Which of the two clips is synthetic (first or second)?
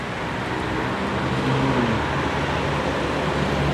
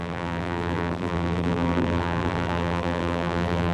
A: second